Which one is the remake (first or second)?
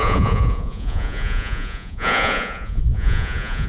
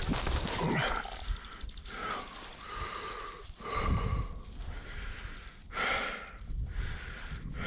first